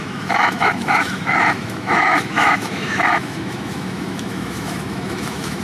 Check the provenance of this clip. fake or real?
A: fake